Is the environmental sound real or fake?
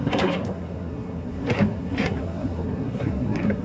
fake